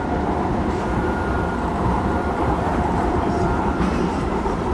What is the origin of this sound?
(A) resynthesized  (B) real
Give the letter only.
A